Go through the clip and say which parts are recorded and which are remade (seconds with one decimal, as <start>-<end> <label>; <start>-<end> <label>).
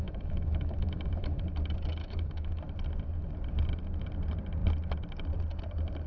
0.0-1.4 remade; 1.4-2.0 recorded; 2.0-2.6 remade; 2.6-6.1 recorded